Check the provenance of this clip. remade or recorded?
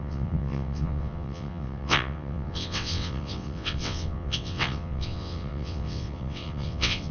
remade